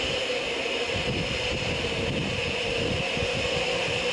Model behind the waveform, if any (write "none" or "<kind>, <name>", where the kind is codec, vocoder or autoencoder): none